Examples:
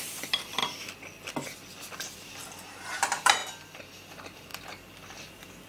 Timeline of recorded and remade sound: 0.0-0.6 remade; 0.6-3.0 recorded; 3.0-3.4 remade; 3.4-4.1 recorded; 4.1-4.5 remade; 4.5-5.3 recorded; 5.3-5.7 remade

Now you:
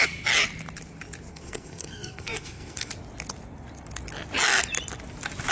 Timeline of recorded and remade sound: 0.0-1.3 recorded; 1.3-2.9 remade; 2.9-5.5 recorded

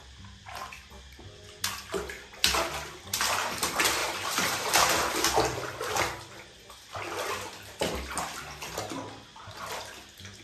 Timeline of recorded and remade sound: 0.0-4.0 recorded; 4.0-4.7 remade; 4.7-10.4 recorded

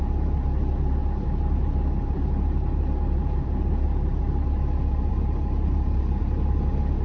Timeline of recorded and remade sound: 0.0-1.0 recorded; 1.0-4.2 remade; 4.2-5.1 recorded; 5.1-6.2 remade; 6.2-7.0 recorded

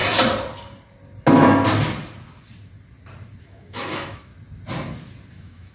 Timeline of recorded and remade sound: 0.0-3.4 recorded; 3.4-4.3 remade; 4.3-5.3 recorded; 5.3-5.7 remade

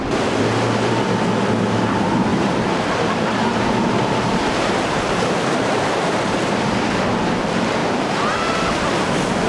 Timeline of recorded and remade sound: 0.0-2.3 recorded; 2.3-5.9 remade; 5.9-7.8 recorded; 7.8-8.9 remade; 8.9-9.5 recorded